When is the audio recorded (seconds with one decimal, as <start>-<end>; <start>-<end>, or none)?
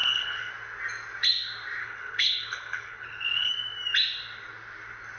0.5-1.8; 3.5-5.2